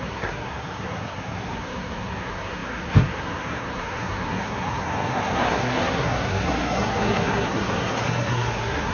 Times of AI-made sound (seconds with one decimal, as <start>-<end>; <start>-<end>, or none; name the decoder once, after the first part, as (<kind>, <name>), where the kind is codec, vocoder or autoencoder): 0.0-8.9 (codec, SNAC)